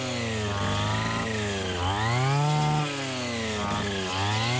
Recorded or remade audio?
recorded